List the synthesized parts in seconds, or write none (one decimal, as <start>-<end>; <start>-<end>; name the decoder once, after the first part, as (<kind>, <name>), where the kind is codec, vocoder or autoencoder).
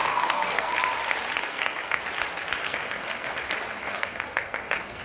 0.0-0.7 (codec, SNAC); 1.4-2.0; 2.6-3.3; 3.8-5.0